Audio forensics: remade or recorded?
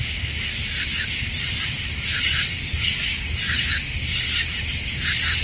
recorded